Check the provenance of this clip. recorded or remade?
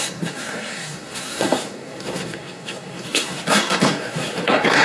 remade